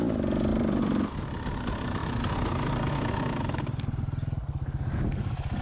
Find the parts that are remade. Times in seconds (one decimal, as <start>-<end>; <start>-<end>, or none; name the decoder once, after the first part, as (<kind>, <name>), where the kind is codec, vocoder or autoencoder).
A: 0.5-1.1 (vocoder, BigVGAN v2)